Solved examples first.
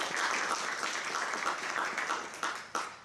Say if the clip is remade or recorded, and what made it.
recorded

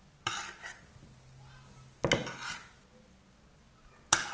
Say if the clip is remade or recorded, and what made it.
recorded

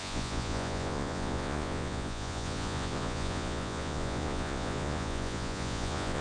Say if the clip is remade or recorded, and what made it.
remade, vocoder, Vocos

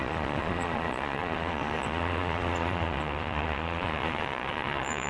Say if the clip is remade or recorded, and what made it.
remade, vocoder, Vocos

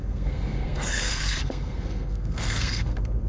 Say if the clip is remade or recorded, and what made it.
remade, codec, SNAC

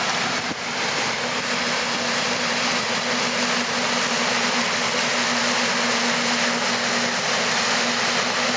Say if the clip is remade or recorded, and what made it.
recorded